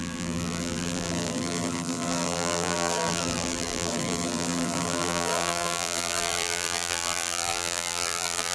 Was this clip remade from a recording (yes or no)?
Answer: yes